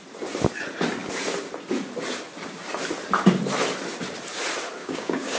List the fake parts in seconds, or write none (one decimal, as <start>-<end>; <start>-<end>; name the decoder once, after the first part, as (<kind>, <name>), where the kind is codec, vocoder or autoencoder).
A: 4.8-5.4 (codec, DAC)